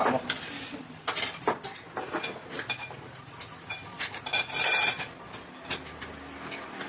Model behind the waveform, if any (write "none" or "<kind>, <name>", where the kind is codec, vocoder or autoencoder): none